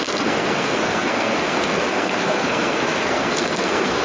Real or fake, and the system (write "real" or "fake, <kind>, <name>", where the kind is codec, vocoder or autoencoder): fake, codec, SNAC